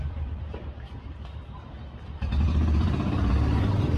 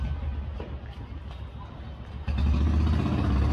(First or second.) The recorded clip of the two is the second